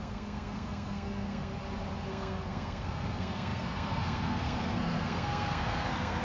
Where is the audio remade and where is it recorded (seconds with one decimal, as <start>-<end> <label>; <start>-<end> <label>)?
0.0-1.5 remade; 1.5-2.1 recorded; 2.1-6.2 remade